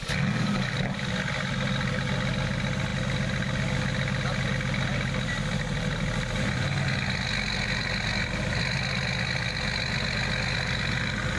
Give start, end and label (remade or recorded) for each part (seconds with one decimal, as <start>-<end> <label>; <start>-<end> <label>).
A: 0.0-11.4 recorded